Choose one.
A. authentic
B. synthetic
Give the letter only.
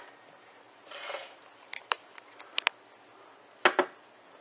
A